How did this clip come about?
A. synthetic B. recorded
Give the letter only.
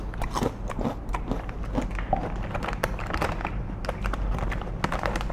B